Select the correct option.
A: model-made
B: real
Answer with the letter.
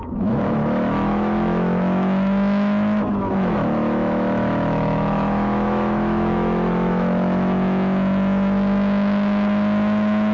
A